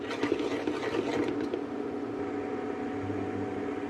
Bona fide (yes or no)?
yes